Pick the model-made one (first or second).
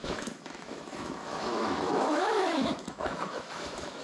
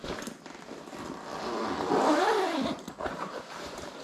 first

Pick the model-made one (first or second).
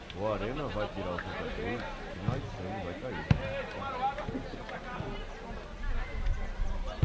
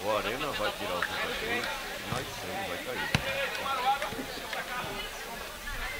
second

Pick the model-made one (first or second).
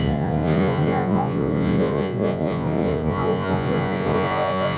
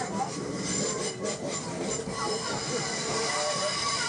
first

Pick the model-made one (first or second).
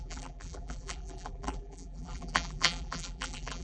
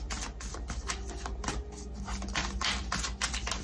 first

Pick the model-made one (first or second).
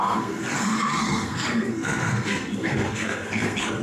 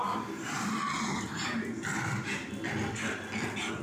first